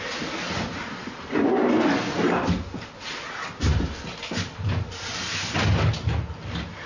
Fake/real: real